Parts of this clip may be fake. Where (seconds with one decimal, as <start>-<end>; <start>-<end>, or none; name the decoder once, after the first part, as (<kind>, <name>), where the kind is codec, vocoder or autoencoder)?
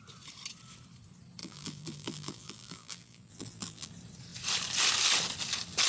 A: 1.4-3.9 (vocoder, BigVGAN v2)